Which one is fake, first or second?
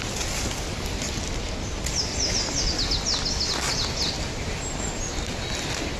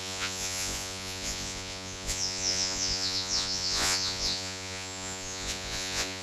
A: second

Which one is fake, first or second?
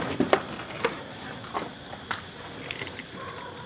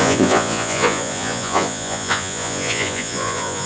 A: second